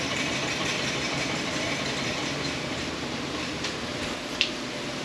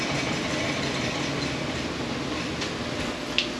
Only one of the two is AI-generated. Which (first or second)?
first